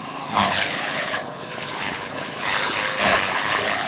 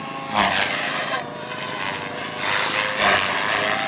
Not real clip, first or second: first